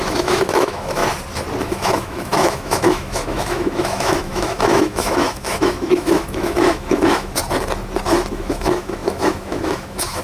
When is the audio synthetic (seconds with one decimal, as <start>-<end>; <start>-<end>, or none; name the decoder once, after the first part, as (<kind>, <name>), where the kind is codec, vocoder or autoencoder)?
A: 0.0-1.0 (autoencoder, DAC-VAE); 1.6-7.4; 8.3-10.2